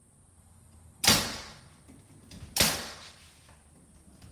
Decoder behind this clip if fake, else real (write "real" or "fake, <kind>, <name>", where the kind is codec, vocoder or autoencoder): real